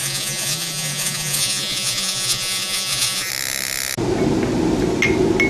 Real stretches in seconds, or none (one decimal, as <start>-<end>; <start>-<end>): 3.3-5.5